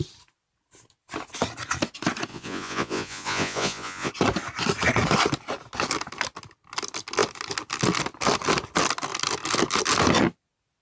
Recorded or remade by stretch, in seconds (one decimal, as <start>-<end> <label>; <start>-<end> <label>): 0.0-2.3 recorded; 2.3-4.1 remade; 4.1-10.8 recorded